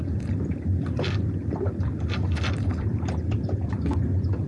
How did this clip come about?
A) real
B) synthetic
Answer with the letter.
B